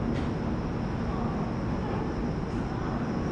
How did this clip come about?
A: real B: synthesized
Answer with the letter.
A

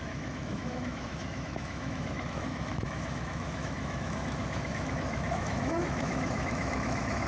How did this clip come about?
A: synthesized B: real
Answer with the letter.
A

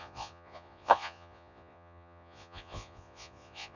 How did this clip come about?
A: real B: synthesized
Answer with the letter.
B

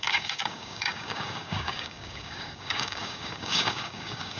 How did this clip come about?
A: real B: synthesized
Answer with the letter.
B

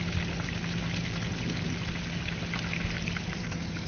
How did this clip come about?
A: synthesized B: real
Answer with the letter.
A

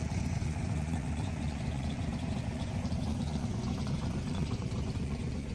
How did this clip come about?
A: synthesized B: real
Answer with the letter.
A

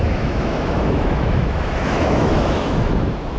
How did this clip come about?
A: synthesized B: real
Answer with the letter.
A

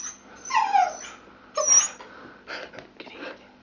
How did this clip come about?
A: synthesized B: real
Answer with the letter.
B